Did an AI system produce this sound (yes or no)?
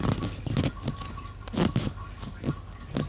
no